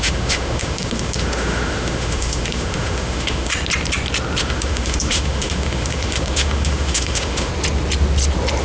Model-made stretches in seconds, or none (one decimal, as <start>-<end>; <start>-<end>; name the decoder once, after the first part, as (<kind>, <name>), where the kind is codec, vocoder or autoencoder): 0.0-3.5 (autoencoder, DAC-VAE); 4.4-7.5